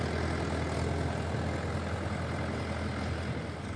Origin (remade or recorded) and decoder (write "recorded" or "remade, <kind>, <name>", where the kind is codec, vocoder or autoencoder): recorded